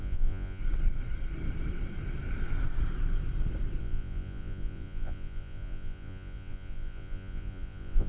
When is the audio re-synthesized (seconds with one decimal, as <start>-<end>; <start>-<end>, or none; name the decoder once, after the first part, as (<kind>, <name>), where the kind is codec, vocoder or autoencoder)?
0.0-0.6 (vocoder, Vocos); 3.8-8.1

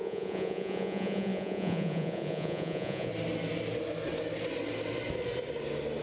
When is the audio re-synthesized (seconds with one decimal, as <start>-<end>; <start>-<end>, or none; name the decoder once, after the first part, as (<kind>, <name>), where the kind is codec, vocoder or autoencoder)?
0.0-3.1 (vocoder, Vocos)

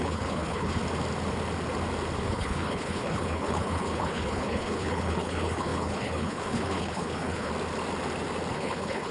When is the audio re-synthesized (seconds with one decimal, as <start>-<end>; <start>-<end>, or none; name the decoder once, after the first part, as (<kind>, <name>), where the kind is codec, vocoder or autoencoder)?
0.0-0.8 (codec, HILCodec); 2.2-7.5; 8.5-9.1

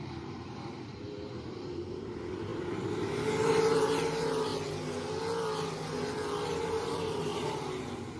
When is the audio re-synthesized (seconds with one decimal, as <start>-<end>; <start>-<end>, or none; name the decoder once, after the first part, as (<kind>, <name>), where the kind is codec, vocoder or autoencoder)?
0.0-4.5 (vocoder, BigVGAN v2); 6.6-8.2

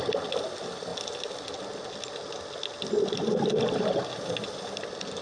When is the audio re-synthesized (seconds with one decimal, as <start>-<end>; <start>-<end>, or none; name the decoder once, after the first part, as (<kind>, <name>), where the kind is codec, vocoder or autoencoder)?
none

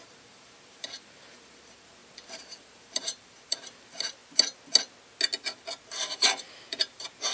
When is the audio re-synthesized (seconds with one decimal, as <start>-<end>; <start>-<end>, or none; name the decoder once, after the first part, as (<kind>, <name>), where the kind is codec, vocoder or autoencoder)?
0.0-4.2 (vocoder, BigVGAN v2); 6.1-7.3

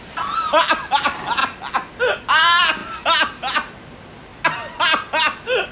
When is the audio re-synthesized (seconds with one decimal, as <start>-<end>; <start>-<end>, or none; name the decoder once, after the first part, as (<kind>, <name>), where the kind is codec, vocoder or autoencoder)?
none